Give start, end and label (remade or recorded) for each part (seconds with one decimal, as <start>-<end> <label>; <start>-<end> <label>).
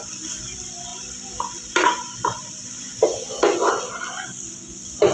0.0-5.1 recorded